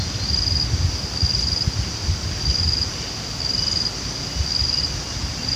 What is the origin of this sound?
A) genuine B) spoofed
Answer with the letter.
A